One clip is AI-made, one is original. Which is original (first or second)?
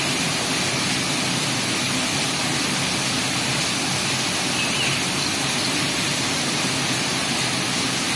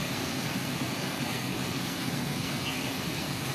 first